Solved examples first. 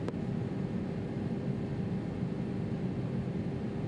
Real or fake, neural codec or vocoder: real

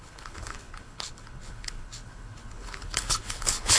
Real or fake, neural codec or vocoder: fake, codec, HILCodec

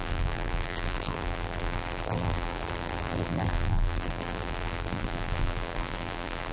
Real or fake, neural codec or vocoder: fake, vocoder, BigVGAN v2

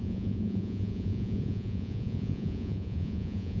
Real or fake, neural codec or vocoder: fake, vocoder, Vocos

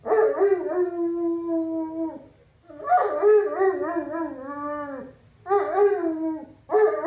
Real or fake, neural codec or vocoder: real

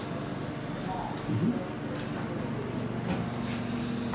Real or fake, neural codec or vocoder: real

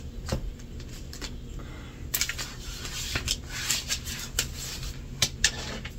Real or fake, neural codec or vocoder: real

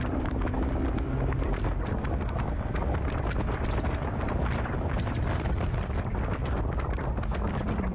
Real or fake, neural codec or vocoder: fake, vocoder, BigVGAN v2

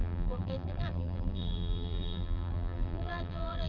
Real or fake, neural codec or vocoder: fake, vocoder, BigVGAN v2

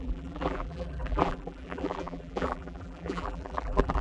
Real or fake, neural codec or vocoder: fake, vocoder, BigVGAN v2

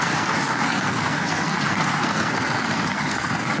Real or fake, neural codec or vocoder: fake, codec, SNAC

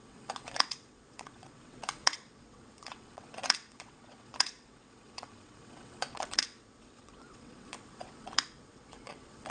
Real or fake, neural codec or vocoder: fake, vocoder, WaveNeXt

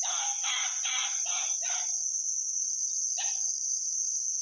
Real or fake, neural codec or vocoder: real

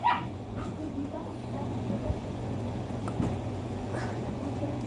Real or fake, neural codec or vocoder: fake, vocoder, Vocos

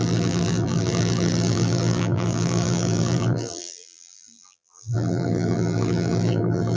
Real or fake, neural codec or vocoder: fake, vocoder, BigVGAN v2